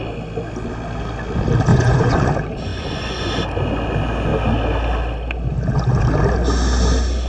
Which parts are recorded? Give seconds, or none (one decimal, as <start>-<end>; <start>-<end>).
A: 0.0-1.7; 2.3-2.7; 3.3-7.3

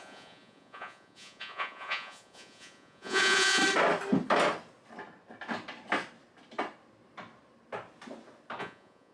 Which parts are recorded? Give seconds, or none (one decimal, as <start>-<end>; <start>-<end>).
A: 3.6-8.6

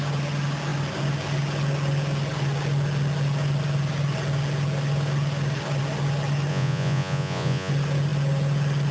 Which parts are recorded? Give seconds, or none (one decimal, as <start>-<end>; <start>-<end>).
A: 0.0-6.5; 7.7-8.9

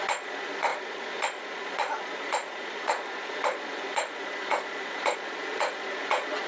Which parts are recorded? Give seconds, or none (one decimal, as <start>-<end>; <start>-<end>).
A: none